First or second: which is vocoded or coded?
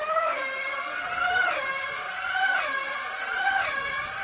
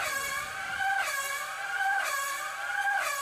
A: first